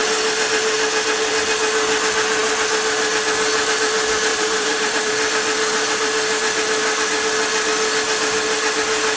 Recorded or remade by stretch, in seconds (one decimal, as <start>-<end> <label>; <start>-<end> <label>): 0.0-4.3 recorded; 4.3-5.1 remade; 5.1-9.2 recorded